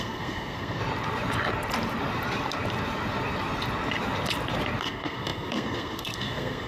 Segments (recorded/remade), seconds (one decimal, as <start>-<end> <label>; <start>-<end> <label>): 0.0-0.8 remade; 0.8-4.8 recorded; 4.8-6.7 remade